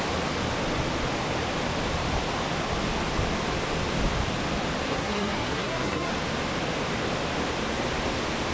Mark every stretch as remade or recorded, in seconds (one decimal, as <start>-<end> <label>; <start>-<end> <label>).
0.0-4.9 recorded; 4.9-6.1 remade; 6.1-8.5 recorded